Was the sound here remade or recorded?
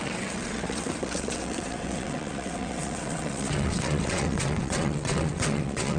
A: remade